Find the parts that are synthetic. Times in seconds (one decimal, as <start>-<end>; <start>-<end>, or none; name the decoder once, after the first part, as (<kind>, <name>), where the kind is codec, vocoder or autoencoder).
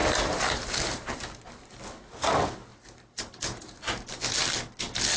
0.0-1.8 (vocoder, BigVGAN v2); 2.7-3.2